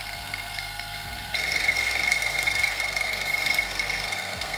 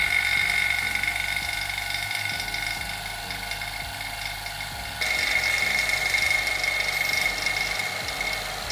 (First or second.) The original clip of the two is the second